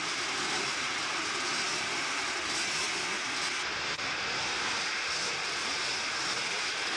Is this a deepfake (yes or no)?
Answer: no